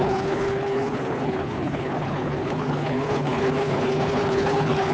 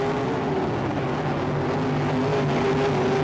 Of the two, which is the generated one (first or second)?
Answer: first